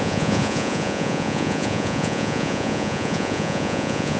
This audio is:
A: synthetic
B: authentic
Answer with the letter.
A